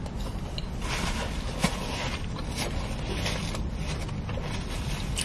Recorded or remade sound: recorded